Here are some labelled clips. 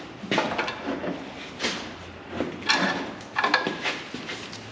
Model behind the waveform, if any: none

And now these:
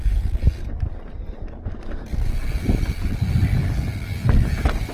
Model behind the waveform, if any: none